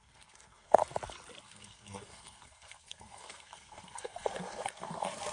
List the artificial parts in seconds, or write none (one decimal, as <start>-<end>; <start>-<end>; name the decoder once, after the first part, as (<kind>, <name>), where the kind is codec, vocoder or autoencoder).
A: 0.0-0.8 (codec, SNAC); 1.4-5.3